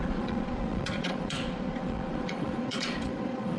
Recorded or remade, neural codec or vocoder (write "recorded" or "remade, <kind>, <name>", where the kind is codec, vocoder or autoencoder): remade, vocoder, Vocos